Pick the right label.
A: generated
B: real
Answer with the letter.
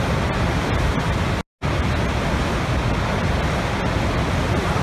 B